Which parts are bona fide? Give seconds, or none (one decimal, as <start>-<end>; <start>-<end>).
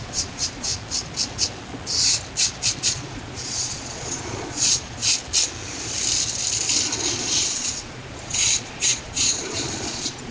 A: 0.7-2.8; 5.0-7.2